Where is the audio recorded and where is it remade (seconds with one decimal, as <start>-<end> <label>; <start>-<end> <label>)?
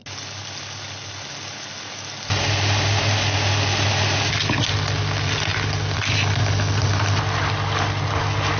0.0-8.6 recorded